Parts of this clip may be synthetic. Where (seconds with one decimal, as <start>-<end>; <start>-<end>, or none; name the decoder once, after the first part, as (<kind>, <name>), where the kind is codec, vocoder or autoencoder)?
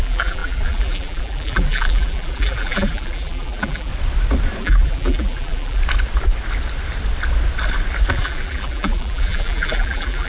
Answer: 0.0-3.9 (vocoder, BigVGAN v2); 4.6-5.8; 8.1-10.3